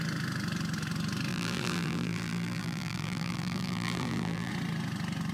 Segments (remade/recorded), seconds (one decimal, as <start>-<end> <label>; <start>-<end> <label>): 0.0-1.3 recorded; 1.3-4.5 remade; 4.5-5.3 recorded